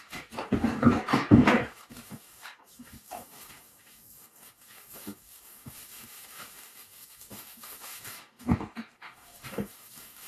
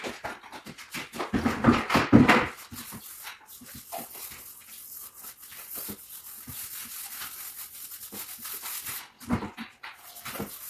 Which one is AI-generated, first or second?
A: first